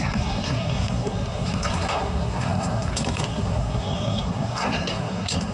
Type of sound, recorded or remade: remade